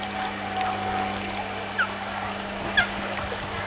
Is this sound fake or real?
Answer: real